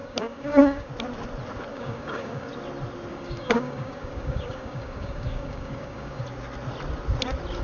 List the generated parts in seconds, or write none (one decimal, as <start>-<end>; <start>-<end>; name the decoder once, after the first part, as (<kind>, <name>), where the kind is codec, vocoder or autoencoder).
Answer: 0.0-0.9 (codec, DAC); 1.7-2.5; 3.1-6.2